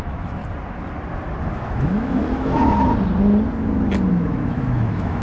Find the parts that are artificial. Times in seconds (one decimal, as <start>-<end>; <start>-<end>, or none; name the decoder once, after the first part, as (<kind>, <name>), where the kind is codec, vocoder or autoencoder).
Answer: 0.0-0.4 (autoencoder, DAC-VAE); 1.4-2.6; 4.1-5.2